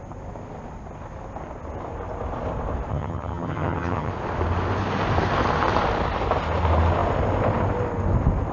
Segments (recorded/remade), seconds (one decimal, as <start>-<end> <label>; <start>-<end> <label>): 0.0-2.9 recorded; 2.9-4.1 remade; 4.1-8.5 recorded